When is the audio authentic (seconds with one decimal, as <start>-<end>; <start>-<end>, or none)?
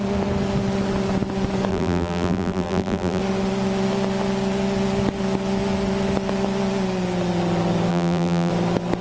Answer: 0.0-1.7; 3.2-7.9; 8.5-9.0